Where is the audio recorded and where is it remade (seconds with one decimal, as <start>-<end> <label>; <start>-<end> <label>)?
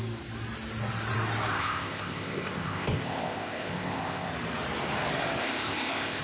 0.0-1.5 recorded; 1.5-4.3 remade; 4.3-5.4 recorded; 5.4-6.2 remade